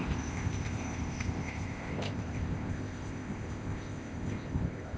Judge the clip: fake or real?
fake